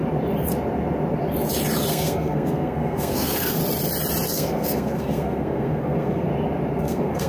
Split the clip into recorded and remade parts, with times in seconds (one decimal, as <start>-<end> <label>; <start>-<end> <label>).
0.0-1.9 recorded; 1.9-3.6 remade; 3.6-4.3 recorded; 4.3-6.3 remade; 6.3-6.8 recorded; 6.8-7.3 remade